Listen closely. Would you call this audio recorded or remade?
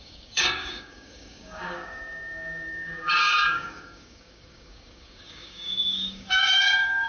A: remade